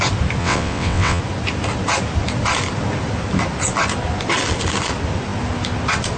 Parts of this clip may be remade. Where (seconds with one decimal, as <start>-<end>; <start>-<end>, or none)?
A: 0.4-1.2